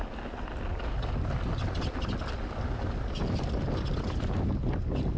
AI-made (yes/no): no